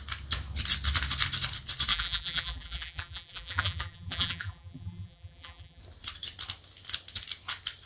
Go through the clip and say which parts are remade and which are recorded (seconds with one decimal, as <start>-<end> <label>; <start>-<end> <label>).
0.0-1.9 recorded; 1.9-5.8 remade; 5.8-7.9 recorded